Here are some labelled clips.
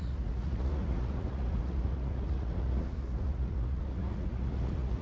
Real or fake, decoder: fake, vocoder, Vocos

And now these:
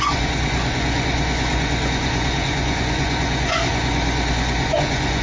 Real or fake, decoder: fake, vocoder, Vocos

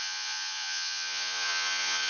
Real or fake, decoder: fake, vocoder, Vocos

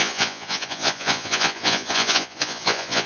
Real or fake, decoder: fake, vocoder, Vocos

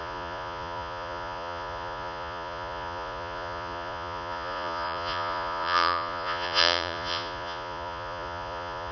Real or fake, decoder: fake, vocoder, Vocos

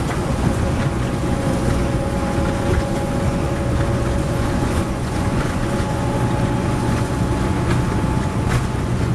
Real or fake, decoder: fake, vocoder, Vocos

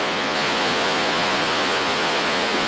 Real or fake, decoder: fake, vocoder, Vocos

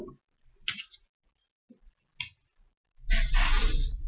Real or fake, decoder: real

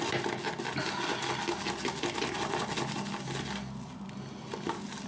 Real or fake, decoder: real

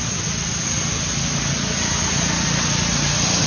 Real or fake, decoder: real